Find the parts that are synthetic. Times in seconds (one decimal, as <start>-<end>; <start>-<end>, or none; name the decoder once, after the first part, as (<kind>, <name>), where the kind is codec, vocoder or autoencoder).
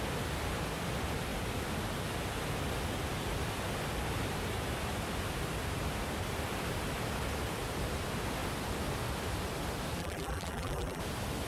10.0-11.0 (vocoder, BigVGAN v2)